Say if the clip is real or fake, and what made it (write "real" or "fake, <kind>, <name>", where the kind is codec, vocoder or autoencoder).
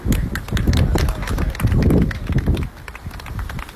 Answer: real